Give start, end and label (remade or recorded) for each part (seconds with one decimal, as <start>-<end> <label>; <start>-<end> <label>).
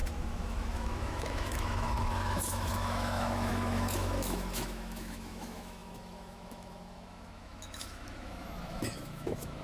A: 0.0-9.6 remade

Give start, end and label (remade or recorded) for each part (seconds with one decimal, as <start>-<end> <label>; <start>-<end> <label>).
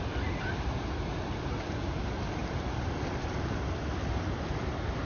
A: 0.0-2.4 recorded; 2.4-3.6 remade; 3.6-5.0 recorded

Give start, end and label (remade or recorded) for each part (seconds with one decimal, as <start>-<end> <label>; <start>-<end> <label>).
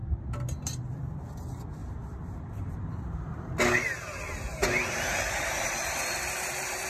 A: 0.0-1.8 recorded; 1.8-3.5 remade; 3.5-4.5 recorded; 4.5-6.9 remade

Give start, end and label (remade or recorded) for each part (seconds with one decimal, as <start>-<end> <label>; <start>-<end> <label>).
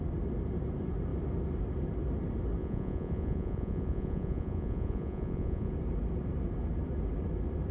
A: 0.0-2.6 recorded; 2.6-5.7 remade; 5.7-7.7 recorded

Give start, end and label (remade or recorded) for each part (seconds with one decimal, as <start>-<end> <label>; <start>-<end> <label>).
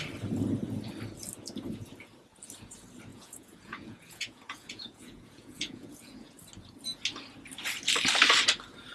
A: 0.0-3.1 recorded; 3.1-6.4 remade; 6.4-8.9 recorded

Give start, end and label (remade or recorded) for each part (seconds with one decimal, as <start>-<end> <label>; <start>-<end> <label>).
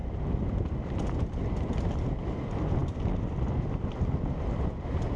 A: 0.0-5.2 recorded